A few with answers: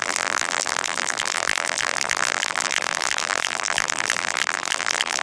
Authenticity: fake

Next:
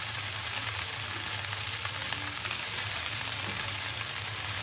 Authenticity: real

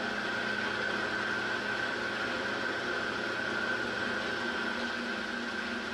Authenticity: real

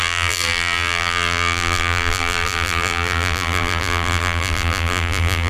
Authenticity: fake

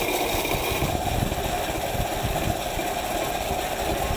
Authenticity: real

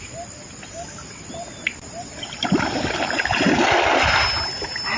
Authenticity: real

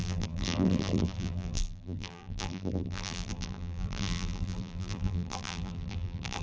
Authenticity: fake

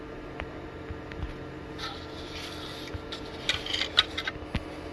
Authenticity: real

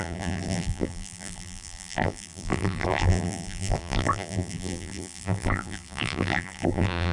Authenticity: fake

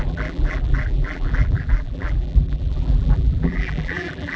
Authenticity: fake